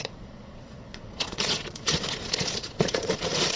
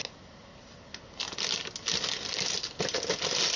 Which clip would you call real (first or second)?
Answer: second